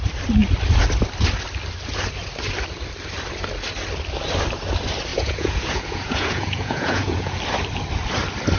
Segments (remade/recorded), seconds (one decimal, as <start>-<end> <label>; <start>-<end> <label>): 0.0-5.1 recorded; 5.1-7.4 remade; 7.4-8.6 recorded